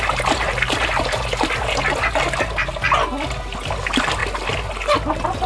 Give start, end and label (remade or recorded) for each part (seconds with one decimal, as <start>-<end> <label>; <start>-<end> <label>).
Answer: 0.0-5.5 recorded